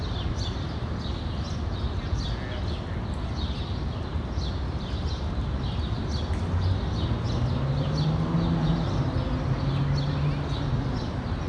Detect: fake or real real